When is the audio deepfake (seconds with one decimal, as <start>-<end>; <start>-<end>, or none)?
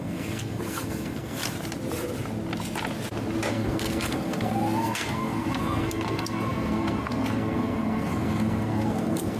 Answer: 0.0-1.4; 3.5-9.4